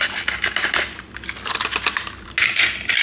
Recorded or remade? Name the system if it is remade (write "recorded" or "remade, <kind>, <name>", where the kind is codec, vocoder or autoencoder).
recorded